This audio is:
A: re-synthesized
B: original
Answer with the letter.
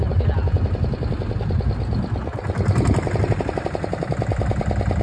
B